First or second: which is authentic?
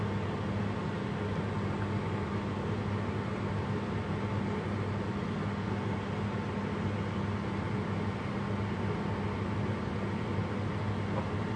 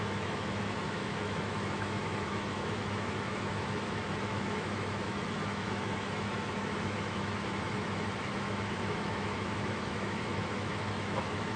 first